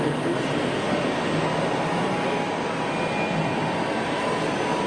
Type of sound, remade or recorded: recorded